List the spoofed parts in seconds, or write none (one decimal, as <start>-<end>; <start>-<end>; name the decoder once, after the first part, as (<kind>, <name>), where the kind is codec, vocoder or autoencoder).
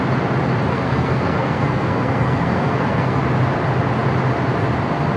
0.7-3.2 (codec, SNAC)